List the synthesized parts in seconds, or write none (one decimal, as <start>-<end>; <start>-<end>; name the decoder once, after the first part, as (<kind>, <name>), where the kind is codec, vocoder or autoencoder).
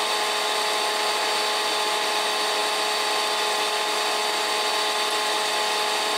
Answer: none